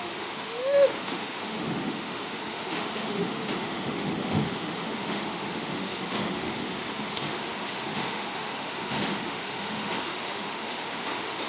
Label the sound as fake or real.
fake